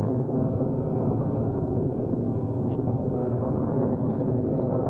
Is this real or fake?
fake